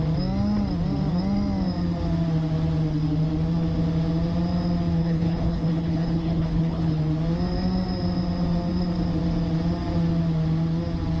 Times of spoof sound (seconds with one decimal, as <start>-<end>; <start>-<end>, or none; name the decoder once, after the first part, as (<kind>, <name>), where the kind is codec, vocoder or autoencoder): 5.0-7.0 (codec, HILCodec)